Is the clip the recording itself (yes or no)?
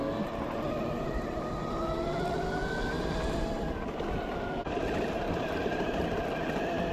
yes